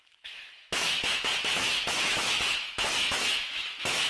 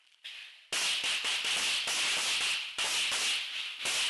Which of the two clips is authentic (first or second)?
second